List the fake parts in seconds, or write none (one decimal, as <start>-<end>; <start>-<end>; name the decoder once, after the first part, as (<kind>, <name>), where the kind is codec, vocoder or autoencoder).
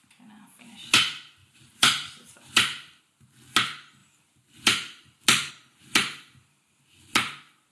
1.4-3.0 (vocoder, BigVGAN v2); 4.0-5.5